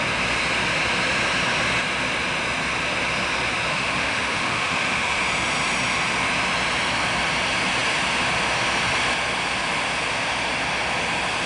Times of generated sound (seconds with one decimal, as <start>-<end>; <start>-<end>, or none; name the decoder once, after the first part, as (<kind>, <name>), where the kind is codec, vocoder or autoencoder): 3.7-5.2 (autoencoder, DAC-VAE)